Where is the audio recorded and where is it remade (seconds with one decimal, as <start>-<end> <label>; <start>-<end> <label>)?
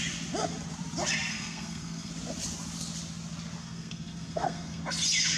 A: 0.0-1.3 recorded; 1.3-2.1 remade; 2.1-3.6 recorded; 3.6-4.8 remade; 4.8-5.4 recorded